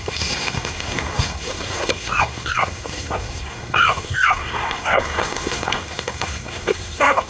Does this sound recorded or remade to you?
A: remade